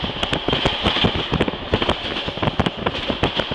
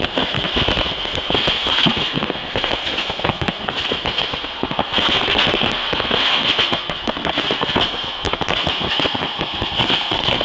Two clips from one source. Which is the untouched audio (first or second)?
first